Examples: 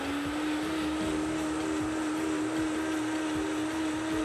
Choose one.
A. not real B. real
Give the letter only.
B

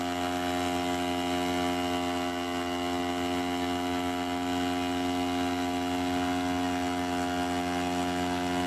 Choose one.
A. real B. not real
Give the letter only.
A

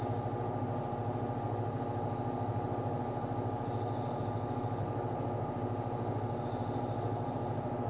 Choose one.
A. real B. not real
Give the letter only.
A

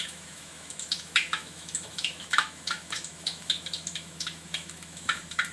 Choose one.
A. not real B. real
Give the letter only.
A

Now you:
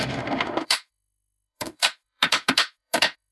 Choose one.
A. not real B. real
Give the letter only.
A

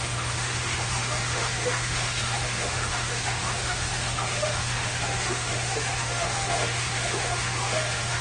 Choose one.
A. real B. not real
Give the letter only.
B